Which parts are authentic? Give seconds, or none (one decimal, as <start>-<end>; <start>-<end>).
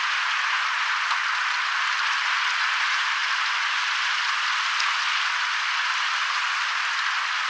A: 0.0-7.5